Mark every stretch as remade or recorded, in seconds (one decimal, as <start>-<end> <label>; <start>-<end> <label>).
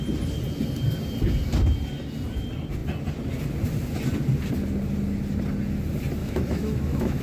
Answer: 0.0-6.2 recorded; 6.2-7.2 remade